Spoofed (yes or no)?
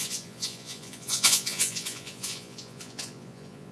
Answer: yes